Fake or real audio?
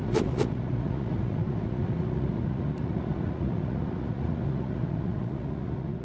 fake